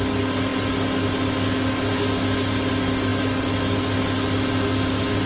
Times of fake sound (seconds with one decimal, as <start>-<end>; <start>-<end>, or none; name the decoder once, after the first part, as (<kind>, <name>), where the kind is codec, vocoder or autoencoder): none

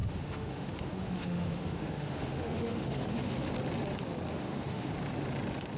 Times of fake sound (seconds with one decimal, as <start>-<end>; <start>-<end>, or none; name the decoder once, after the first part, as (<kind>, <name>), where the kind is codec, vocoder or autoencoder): 0.0-3.5 (autoencoder, DAC-VAE); 4.3-4.9

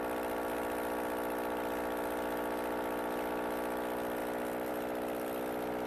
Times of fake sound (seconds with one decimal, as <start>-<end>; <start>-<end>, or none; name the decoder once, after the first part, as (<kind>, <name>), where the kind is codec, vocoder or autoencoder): 4.2-4.7 (vocoder, BigVGAN v2)

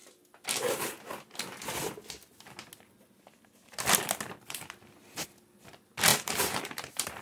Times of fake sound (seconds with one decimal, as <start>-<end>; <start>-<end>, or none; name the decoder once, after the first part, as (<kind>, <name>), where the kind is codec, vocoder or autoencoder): 6.1-7.2 (vocoder, BigVGAN v2)

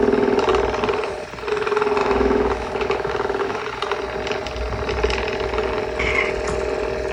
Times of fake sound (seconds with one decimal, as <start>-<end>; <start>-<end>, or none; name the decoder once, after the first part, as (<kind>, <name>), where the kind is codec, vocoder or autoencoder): 2.0-3.6 (autoencoder, DAC-VAE)

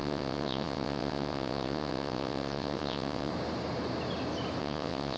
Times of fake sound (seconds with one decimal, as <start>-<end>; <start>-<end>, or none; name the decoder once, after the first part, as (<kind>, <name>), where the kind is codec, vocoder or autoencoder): 0.0-3.3 (vocoder, WaveNeXt); 4.6-5.2

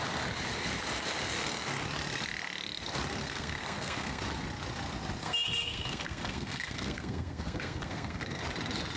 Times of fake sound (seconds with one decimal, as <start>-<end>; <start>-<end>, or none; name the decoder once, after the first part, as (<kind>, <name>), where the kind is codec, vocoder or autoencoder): 3.2-4.2 (codec, SNAC); 5.2-8.4

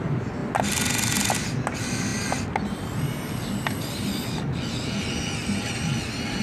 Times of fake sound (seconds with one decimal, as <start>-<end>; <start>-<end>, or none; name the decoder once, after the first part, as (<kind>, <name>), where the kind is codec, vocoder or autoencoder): none